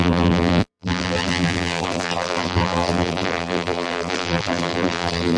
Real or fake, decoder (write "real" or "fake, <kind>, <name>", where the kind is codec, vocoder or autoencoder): fake, vocoder, BigVGAN v2